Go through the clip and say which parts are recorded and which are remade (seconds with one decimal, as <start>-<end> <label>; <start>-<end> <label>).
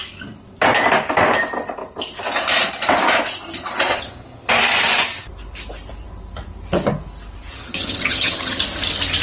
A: 0.0-3.9 recorded; 3.9-4.5 remade; 4.5-7.5 recorded; 7.5-8.6 remade; 8.6-9.2 recorded